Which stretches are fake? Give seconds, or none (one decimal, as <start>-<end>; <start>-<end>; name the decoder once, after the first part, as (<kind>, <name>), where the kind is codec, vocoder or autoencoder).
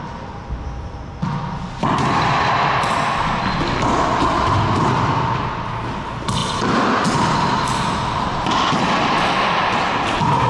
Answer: none